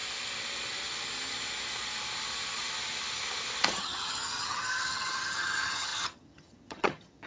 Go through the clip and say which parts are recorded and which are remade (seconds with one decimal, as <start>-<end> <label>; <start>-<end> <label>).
0.0-3.7 recorded; 3.7-7.3 remade